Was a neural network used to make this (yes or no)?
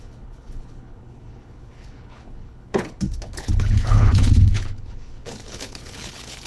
yes